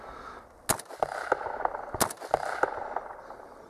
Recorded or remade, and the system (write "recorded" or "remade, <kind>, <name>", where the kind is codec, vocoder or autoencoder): recorded